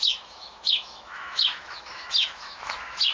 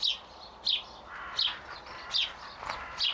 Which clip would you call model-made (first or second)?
first